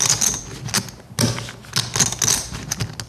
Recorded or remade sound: recorded